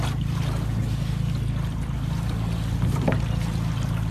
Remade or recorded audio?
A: recorded